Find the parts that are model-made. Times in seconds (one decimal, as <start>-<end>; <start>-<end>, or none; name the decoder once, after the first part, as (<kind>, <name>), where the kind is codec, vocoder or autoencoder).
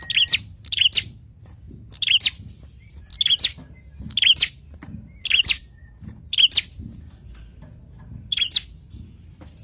none